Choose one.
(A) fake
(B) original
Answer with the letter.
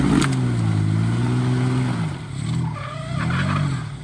B